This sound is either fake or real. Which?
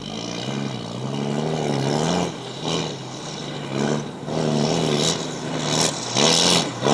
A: real